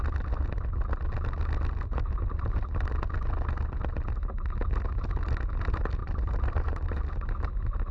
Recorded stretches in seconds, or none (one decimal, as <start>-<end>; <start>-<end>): 0.0-6.0; 7.1-7.9